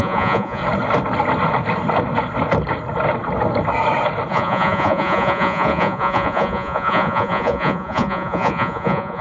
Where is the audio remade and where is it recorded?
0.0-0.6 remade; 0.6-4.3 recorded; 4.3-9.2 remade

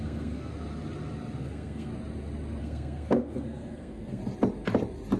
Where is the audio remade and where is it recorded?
0.0-0.5 remade; 0.5-1.4 recorded; 1.4-1.9 remade; 1.9-2.6 recorded; 2.6-4.2 remade; 4.2-5.2 recorded